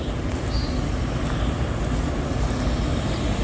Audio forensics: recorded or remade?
recorded